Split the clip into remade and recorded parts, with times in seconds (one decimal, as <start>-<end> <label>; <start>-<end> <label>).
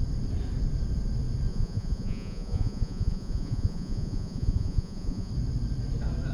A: 0.0-1.5 recorded; 1.5-5.3 remade; 5.3-6.3 recorded